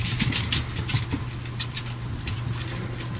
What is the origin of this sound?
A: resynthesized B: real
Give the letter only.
B